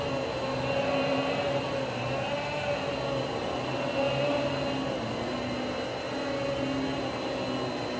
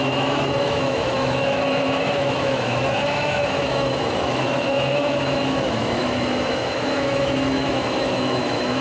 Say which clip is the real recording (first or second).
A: first